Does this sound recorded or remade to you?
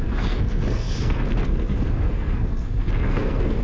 remade